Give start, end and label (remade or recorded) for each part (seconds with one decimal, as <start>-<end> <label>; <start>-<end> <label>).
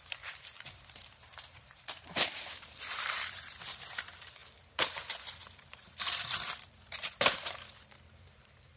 0.0-8.8 remade